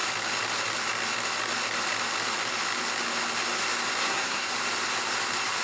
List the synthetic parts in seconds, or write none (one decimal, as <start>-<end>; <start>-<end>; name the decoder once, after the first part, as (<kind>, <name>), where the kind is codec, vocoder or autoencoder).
4.0-4.5 (codec, SNAC)